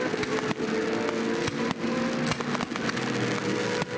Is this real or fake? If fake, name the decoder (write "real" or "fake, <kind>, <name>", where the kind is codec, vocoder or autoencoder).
real